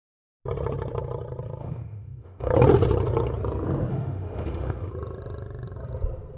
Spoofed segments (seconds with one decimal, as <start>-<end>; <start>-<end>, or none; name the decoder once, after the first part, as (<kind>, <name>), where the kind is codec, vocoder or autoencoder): 1.6-2.5 (autoencoder, DAC-VAE); 3.9-4.9